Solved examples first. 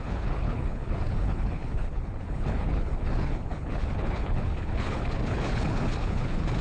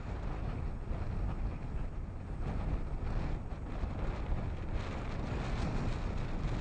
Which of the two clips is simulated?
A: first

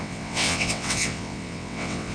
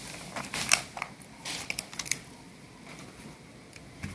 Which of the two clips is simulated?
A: first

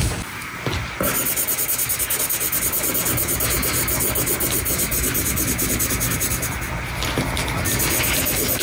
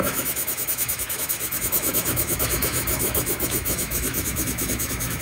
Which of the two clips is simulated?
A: second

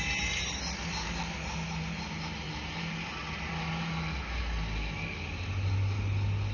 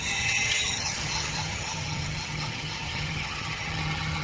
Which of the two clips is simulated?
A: second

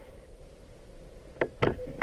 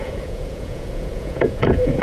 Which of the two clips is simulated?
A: second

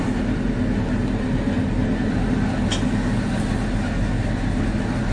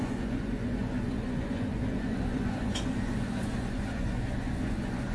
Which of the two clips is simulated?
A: second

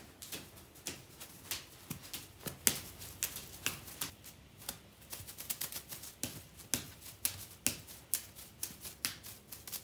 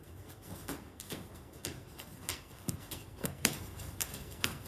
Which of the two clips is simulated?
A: second